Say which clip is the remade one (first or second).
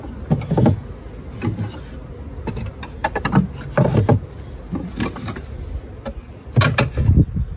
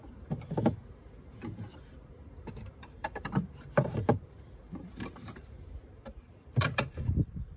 second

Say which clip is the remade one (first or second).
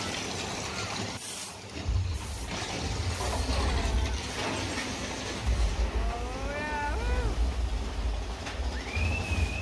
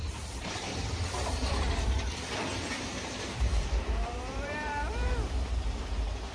second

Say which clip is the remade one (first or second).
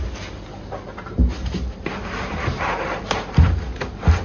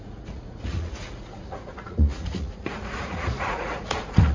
second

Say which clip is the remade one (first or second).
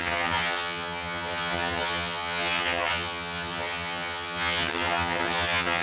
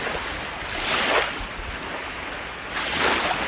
first